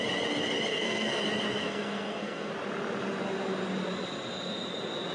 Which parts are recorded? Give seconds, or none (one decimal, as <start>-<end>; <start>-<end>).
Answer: 0.0-0.7; 1.2-1.6; 2.5-5.1